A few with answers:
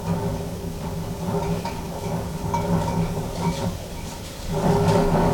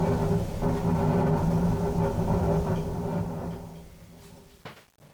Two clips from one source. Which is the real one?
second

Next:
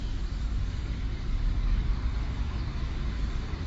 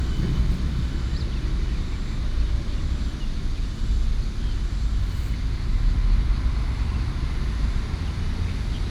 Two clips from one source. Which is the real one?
second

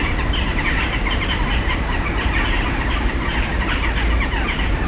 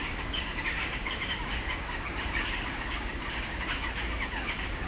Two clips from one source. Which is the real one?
first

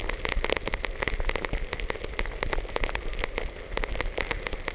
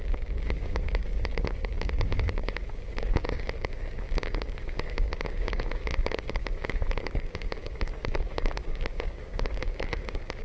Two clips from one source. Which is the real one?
first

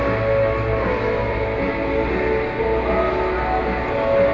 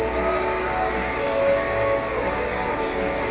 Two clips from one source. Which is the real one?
first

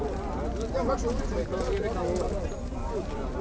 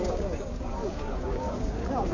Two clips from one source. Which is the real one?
first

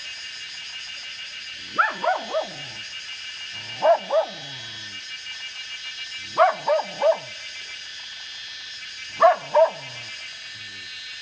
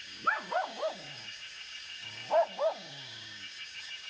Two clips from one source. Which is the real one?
first